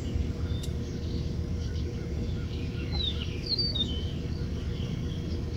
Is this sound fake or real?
fake